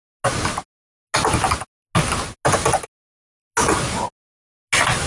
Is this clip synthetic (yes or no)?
no